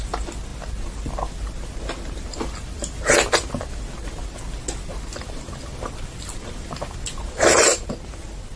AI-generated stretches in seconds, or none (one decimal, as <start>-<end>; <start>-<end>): none